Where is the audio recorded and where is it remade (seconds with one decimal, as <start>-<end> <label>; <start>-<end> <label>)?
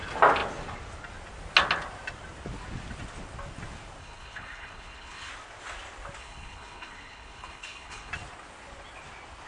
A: 0.0-4.0 recorded; 4.0-5.3 remade; 5.3-6.2 recorded; 6.2-8.1 remade; 8.1-9.5 recorded